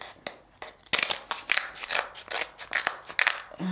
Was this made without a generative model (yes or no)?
yes